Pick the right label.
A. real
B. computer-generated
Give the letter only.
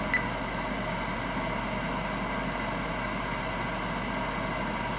A